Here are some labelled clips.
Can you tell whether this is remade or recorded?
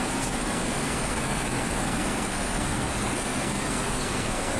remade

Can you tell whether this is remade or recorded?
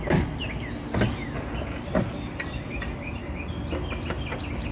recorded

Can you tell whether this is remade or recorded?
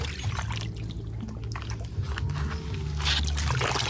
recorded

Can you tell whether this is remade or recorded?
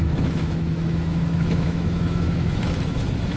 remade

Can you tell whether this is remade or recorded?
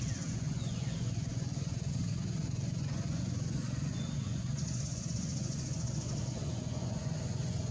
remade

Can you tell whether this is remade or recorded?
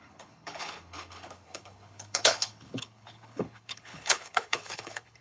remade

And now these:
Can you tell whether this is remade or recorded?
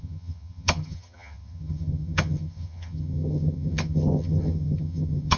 remade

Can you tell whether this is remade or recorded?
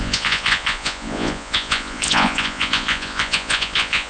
remade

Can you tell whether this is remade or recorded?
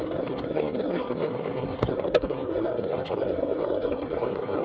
remade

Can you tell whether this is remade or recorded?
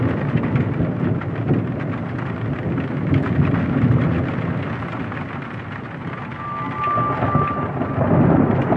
recorded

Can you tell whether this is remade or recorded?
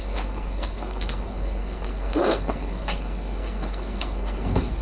remade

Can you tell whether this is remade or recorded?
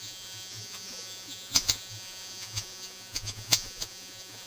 remade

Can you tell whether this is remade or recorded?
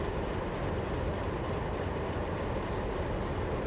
recorded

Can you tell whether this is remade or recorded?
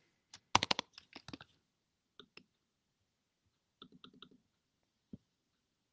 recorded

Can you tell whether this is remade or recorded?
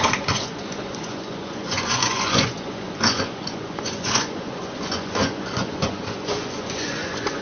remade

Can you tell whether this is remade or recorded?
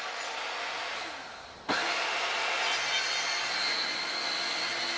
recorded